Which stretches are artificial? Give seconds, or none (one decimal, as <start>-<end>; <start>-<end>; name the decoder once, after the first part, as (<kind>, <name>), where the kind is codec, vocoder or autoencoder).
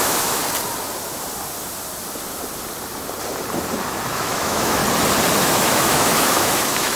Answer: 0.0-0.4 (autoencoder, DAC-VAE); 4.1-4.8; 5.4-7.0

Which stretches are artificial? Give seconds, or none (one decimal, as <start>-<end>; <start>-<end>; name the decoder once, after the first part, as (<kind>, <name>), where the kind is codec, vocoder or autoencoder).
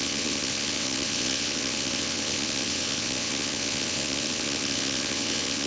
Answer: 0.0-5.7 (vocoder, WaveNeXt)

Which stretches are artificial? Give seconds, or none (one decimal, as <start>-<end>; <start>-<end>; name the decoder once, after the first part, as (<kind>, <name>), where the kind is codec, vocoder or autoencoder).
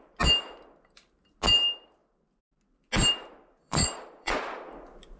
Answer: 3.6-4.7 (vocoder, Vocos)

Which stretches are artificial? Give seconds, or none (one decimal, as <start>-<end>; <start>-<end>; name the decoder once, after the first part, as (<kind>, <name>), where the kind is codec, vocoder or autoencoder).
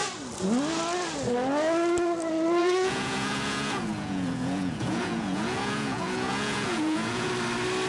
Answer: 2.6-7.3 (vocoder, Vocos)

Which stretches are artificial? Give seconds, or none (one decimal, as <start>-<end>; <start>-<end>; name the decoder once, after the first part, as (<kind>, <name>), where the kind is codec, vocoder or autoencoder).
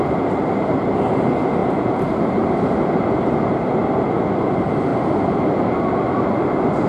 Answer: 1.6-3.9 (vocoder, BigVGAN v2)